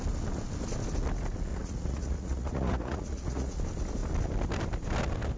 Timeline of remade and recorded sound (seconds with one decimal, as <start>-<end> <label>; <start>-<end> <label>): 0.0-1.5 recorded; 1.5-3.6 remade; 3.6-5.4 recorded